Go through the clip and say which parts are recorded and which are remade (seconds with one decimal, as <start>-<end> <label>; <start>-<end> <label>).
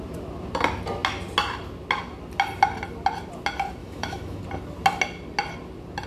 0.0-3.8 recorded; 3.8-4.4 remade; 4.4-6.1 recorded